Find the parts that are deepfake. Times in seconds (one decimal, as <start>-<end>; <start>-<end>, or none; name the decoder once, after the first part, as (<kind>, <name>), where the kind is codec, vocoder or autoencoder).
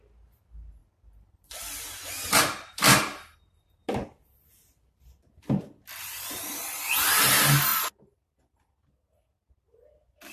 0.8-1.8 (vocoder, BigVGAN v2)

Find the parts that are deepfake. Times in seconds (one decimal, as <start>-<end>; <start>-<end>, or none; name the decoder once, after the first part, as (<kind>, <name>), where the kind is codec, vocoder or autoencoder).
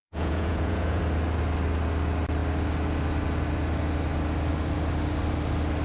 0.0-1.0 (vocoder, Vocos)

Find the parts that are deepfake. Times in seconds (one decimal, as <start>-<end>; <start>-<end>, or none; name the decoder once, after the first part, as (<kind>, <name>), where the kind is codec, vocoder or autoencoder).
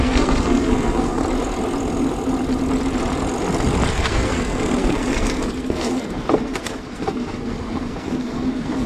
0.0-1.2 (codec, SNAC); 3.9-8.9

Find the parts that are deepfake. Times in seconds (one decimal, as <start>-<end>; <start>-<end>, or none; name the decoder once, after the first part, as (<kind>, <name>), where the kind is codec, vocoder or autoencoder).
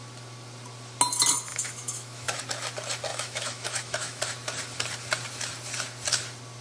1.5-2.4 (autoencoder, DAC-VAE); 3.1-4.2